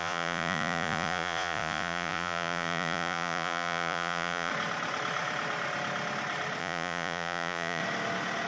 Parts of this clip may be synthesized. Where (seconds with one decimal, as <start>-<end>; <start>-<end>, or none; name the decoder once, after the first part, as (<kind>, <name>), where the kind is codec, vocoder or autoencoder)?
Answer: 0.0-4.5 (vocoder, Vocos); 6.6-7.8